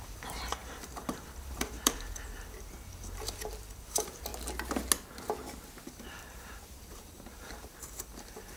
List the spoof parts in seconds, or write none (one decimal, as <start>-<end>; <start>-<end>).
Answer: 0.0-4.3; 5.9-8.6